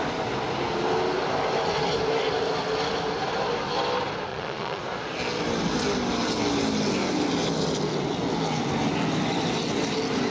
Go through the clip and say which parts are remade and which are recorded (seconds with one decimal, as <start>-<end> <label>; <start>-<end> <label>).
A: 0.0-4.3 recorded; 4.3-4.8 remade; 4.8-10.3 recorded